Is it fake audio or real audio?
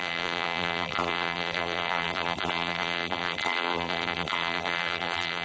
fake